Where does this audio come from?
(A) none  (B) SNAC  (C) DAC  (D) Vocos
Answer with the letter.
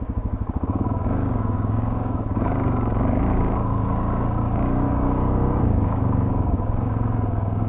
C